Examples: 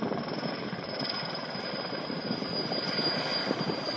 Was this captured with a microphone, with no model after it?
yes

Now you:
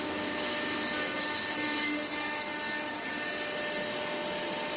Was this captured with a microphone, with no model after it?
yes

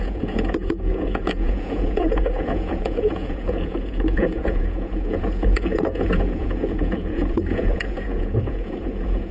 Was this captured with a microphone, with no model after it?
no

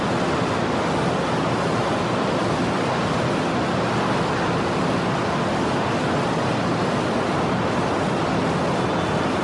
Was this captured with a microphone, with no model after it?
yes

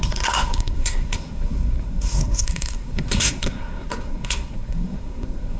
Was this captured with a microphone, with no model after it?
no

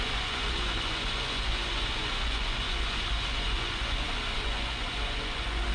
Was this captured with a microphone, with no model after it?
no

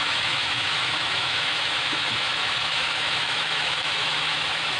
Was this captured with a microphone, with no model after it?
no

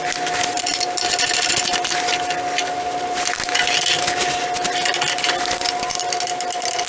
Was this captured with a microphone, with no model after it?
yes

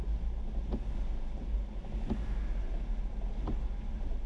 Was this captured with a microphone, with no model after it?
yes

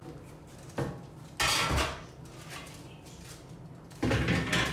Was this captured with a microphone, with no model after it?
yes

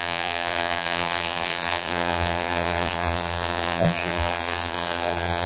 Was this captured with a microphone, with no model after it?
no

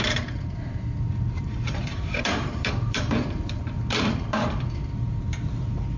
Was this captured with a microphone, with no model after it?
no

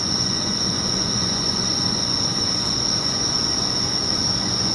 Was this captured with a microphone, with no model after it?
no